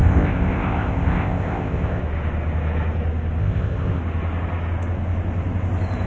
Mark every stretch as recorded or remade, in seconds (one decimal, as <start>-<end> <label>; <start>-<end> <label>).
0.0-2.0 remade; 2.0-3.4 recorded; 3.4-4.0 remade; 4.0-6.1 recorded

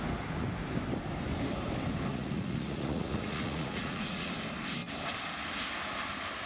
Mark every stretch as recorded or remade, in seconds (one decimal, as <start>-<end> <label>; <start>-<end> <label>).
0.0-2.1 recorded; 2.1-4.3 remade; 4.3-6.5 recorded

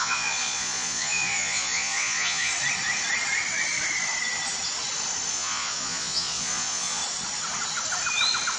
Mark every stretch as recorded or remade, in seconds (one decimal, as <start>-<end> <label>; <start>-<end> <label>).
0.0-2.5 remade; 2.5-5.3 recorded; 5.3-7.0 remade; 7.0-8.6 recorded